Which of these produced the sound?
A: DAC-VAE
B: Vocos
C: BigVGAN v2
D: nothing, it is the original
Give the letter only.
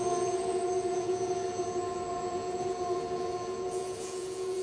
B